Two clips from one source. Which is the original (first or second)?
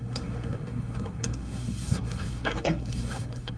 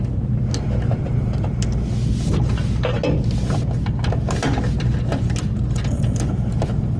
second